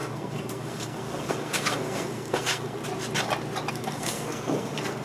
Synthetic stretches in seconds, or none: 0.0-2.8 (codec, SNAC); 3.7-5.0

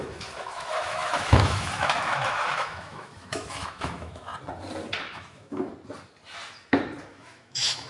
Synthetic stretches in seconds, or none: 0.0-4.3 (autoencoder, DAC-VAE); 5.0-5.7; 7.1-7.9

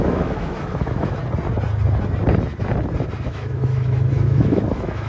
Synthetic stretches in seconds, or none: 0.0-1.2 (autoencoder, DAC-VAE); 3.2-5.1

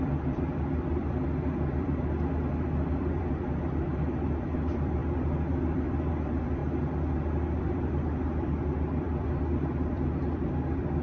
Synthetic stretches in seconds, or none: 0.0-6.6 (vocoder, BigVGAN v2); 7.6-11.0